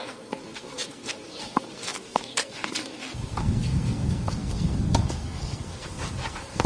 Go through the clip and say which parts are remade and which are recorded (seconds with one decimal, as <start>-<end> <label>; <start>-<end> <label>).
0.0-6.7 remade